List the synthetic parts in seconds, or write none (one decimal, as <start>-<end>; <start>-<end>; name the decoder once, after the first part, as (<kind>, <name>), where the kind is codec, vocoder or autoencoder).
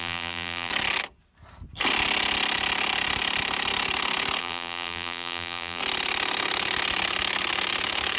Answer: 0.0-0.7 (vocoder, BigVGAN v2); 4.4-5.8